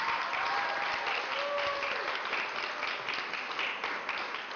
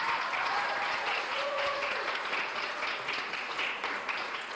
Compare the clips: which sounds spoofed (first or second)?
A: second